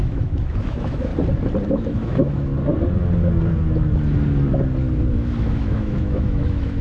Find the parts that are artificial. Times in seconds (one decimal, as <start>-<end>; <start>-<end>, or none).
0.0-1.1; 1.7-2.5; 5.1-6.8